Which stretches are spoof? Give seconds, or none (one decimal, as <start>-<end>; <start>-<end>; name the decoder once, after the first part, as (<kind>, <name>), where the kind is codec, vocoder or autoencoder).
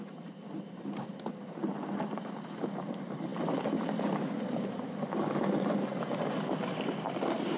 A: none